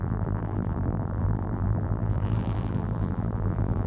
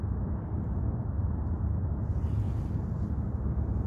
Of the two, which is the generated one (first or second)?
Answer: first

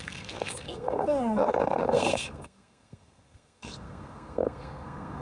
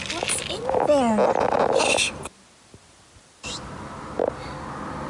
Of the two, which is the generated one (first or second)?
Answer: first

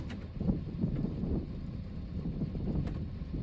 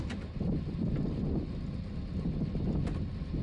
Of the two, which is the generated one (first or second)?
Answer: first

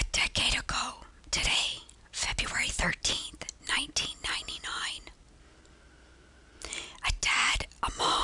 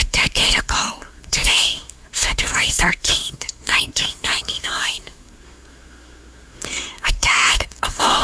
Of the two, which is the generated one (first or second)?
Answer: second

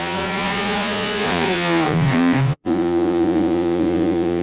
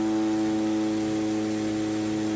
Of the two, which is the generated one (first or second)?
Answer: first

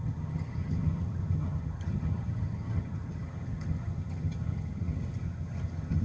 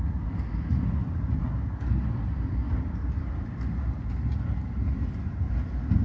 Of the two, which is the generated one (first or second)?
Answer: first